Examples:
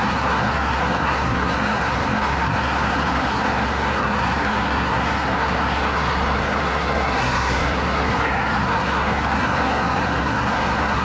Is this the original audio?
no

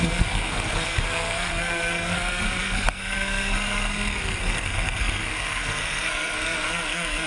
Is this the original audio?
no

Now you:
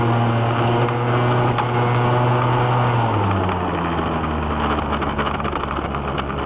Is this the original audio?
yes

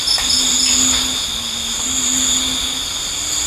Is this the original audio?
yes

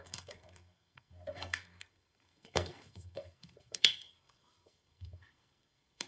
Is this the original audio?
no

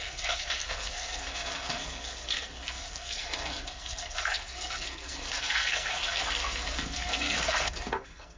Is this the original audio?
no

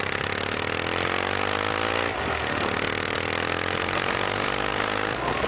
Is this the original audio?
yes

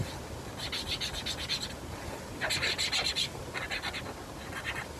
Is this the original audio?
yes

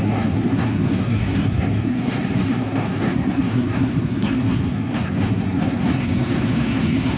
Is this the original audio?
no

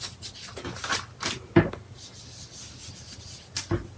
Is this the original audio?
yes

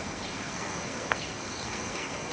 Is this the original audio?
no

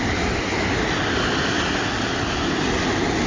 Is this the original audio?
yes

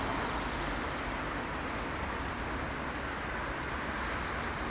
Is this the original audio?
yes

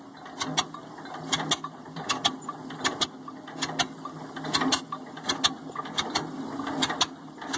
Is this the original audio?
yes